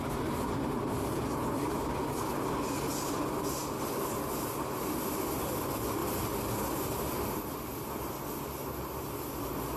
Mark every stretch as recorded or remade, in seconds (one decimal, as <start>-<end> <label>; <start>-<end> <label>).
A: 0.0-9.8 recorded